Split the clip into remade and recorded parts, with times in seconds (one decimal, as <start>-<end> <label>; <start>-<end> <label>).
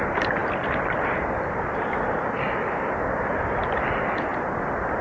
0.0-5.0 recorded